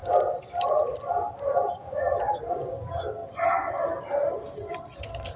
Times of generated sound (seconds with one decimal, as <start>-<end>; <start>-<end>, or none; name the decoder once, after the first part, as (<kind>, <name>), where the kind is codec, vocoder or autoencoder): none